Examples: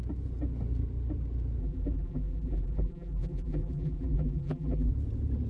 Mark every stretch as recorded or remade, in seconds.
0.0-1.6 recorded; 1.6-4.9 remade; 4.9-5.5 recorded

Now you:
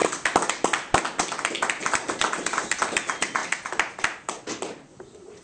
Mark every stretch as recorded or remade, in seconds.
0.0-1.8 recorded; 1.8-2.6 remade; 2.6-5.4 recorded

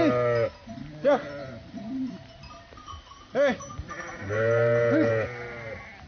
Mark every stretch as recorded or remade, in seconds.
0.0-1.4 recorded; 1.4-5.1 remade; 5.1-6.1 recorded

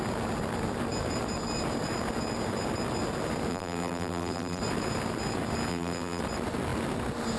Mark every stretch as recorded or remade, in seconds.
0.0-3.5 recorded; 3.5-4.6 remade; 4.6-5.7 recorded; 5.7-6.2 remade; 6.2-7.4 recorded

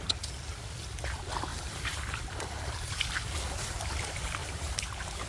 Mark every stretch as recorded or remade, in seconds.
0.0-1.5 recorded; 1.5-3.1 remade; 3.1-4.4 recorded; 4.4-5.3 remade

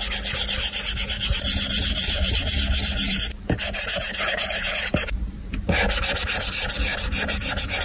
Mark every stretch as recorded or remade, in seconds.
0.0-1.0 recorded; 1.0-5.7 remade; 5.7-6.9 recorded; 6.9-7.8 remade

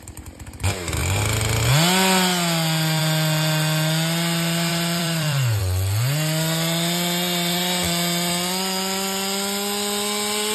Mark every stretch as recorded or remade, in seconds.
0.0-4.7 recorded; 4.7-5.6 remade; 5.6-10.5 recorded